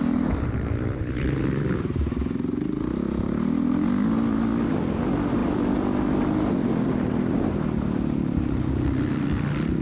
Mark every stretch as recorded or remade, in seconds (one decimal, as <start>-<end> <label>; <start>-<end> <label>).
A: 0.0-9.8 recorded